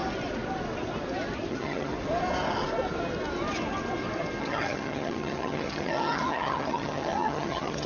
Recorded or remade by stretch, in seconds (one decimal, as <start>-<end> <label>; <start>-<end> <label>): 0.0-1.5 recorded; 1.5-1.9 remade; 1.9-4.4 recorded; 4.4-7.9 remade